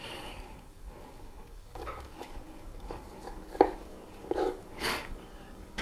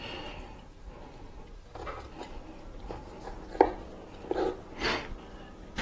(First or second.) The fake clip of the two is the first